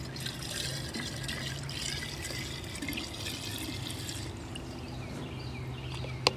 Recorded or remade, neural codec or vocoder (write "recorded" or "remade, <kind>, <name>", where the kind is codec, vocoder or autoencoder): recorded